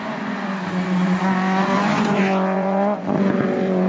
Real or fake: fake